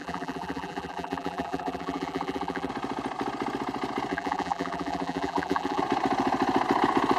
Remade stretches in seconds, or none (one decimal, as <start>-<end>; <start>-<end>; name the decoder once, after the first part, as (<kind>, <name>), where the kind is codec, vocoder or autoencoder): 0.0-2.7 (vocoder, BigVGAN v2); 4.1-5.8